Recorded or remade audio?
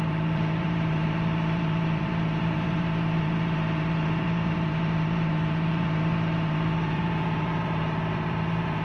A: remade